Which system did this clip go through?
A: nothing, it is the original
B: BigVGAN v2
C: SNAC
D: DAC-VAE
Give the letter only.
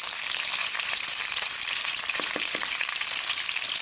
B